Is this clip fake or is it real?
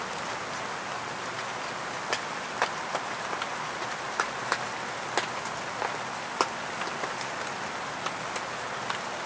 real